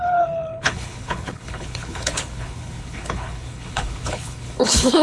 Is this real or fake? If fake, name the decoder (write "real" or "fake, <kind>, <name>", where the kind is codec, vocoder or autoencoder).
fake, codec, HILCodec